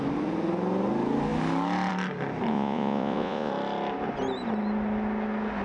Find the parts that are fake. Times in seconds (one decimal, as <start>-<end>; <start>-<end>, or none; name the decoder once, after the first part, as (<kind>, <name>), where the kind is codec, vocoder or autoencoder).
2.5-3.5 (vocoder, Vocos)